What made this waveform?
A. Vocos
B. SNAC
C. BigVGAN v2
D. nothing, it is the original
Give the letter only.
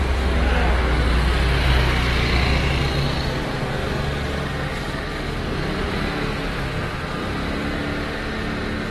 D